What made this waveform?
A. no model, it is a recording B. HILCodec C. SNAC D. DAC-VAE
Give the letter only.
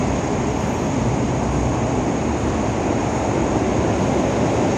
A